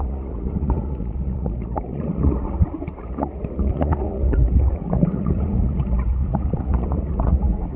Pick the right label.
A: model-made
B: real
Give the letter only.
A